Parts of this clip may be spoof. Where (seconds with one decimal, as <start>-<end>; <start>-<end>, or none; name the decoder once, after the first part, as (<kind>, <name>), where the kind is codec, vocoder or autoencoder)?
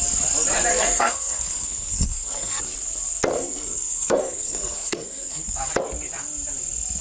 0.7-2.6 (codec, SNAC); 3.3-5.6